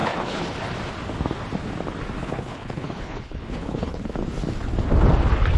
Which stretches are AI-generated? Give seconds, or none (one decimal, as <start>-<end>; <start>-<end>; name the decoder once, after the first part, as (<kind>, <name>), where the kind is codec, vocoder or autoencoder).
0.0-0.5 (codec, HILCodec); 2.2-4.0